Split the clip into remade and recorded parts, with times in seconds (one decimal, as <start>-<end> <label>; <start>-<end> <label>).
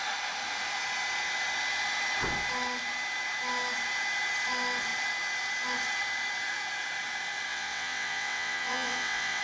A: 0.0-7.5 recorded; 7.5-9.4 remade